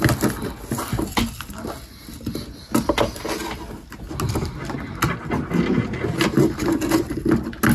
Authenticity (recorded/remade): recorded